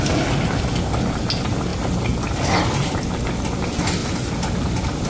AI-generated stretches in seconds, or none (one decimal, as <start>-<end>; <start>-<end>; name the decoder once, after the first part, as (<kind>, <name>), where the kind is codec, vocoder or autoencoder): 4.0-4.5 (vocoder, BigVGAN v2)